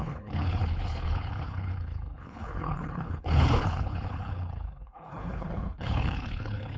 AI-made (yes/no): yes